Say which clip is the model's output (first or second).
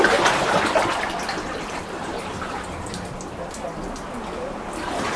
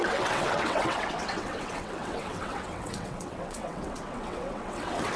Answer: second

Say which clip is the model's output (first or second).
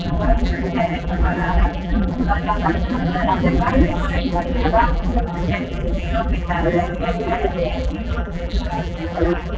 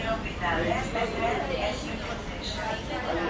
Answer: first